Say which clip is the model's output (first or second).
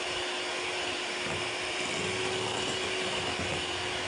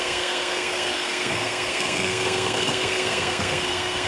second